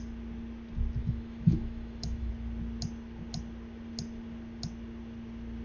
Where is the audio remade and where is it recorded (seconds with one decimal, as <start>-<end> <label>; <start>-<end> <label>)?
0.0-1.0 recorded; 1.0-2.3 remade; 2.3-5.6 recorded